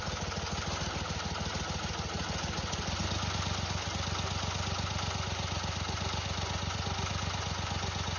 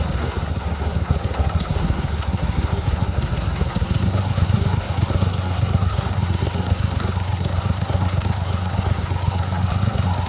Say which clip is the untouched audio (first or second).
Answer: first